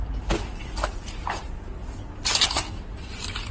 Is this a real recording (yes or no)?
yes